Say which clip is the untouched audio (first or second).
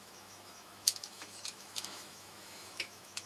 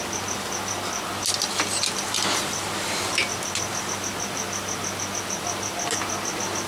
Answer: second